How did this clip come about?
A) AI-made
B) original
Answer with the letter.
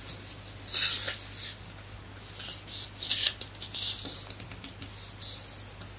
B